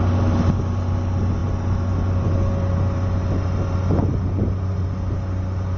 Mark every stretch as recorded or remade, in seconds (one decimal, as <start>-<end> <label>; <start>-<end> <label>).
0.0-5.8 recorded